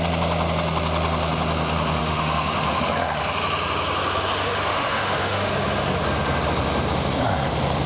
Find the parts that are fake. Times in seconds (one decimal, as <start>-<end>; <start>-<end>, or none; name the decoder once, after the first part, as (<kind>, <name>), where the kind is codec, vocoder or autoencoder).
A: 2.0-2.8 (autoencoder, DAC-VAE); 4.7-5.5